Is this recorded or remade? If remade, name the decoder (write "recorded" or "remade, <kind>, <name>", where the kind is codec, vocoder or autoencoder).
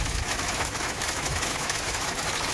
remade, autoencoder, DAC-VAE